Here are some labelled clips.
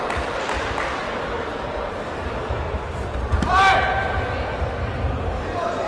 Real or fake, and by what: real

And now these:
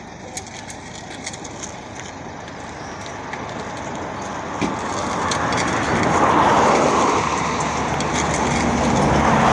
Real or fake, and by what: real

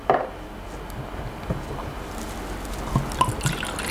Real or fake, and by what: real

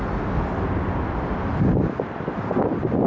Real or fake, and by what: real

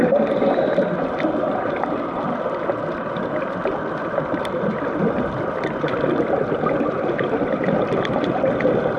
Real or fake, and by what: fake, vocoder, BigVGAN v2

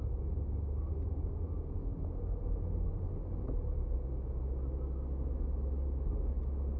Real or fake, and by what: real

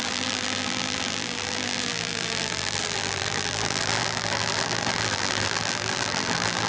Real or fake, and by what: fake, vocoder, BigVGAN v2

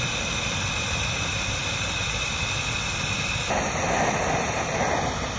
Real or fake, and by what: real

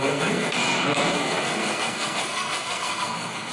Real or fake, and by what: fake, codec, SNAC